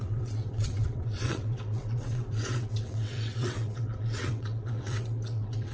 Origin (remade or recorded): remade